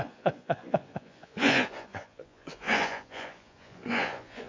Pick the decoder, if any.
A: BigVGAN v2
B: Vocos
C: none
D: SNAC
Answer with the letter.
B